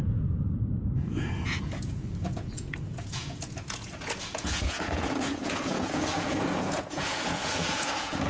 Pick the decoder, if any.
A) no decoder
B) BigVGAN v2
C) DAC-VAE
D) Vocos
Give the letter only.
D